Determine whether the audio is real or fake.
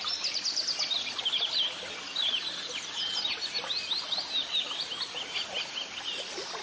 real